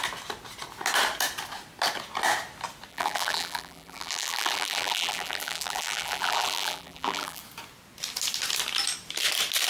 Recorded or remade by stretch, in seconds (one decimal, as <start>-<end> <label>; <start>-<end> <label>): 0.0-2.9 recorded; 2.9-7.4 remade; 7.4-9.7 recorded

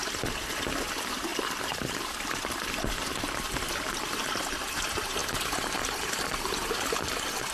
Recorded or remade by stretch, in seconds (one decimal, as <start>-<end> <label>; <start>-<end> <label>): 0.0-1.3 recorded; 1.3-4.1 remade; 4.1-5.2 recorded; 5.2-6.2 remade; 6.2-7.5 recorded

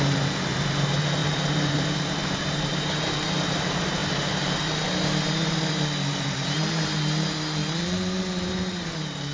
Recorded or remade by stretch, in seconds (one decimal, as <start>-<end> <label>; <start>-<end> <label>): 0.0-7.6 remade; 7.6-8.5 recorded; 8.5-9.3 remade

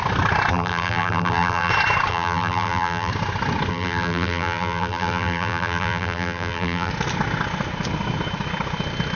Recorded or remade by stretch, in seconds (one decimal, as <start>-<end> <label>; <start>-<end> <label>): 0.0-0.5 recorded; 0.5-1.7 remade; 1.7-2.1 recorded; 2.1-3.1 remade; 3.1-3.7 recorded; 3.7-6.9 remade; 6.9-9.2 recorded

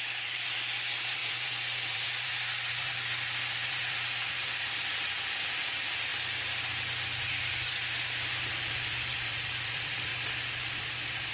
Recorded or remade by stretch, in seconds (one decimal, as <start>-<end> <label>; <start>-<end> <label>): 0.0-6.1 remade; 6.1-8.7 recorded; 8.7-10.1 remade; 10.1-11.3 recorded